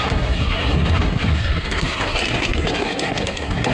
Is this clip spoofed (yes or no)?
yes